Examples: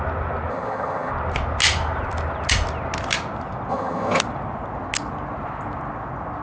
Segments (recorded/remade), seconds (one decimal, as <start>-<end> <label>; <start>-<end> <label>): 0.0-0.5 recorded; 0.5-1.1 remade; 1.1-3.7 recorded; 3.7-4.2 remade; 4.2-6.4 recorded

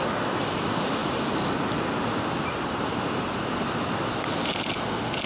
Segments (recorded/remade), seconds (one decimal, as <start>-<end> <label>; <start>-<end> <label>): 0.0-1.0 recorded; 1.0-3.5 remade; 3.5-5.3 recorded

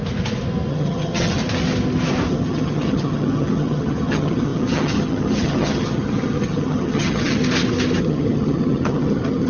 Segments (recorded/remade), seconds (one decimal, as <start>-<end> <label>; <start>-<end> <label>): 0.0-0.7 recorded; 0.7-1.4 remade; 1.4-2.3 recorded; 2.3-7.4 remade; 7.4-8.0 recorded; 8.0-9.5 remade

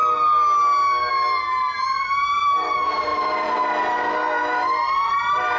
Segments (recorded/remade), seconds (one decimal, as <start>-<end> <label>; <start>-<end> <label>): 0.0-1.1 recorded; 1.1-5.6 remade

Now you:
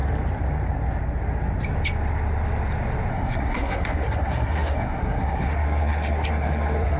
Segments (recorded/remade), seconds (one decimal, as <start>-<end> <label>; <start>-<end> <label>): 0.0-3.1 recorded; 3.1-7.0 remade

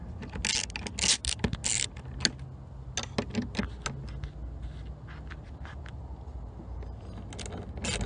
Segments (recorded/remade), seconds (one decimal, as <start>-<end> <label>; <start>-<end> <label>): 0.0-8.1 recorded

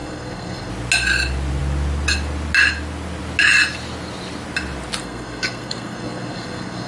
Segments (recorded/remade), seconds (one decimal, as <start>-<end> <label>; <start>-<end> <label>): 0.0-0.7 remade; 0.7-5.0 recorded; 5.0-6.9 remade

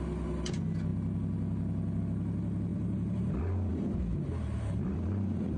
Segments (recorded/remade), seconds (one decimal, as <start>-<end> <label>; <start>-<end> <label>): 0.0-2.7 recorded; 2.7-3.3 remade; 3.3-3.7 recorded; 3.7-5.6 remade